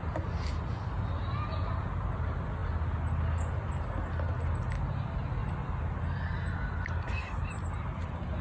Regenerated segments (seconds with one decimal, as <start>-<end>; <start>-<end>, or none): none